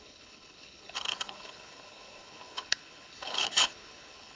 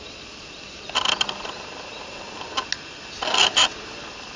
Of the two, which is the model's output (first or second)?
first